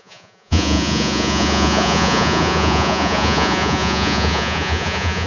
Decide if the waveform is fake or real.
fake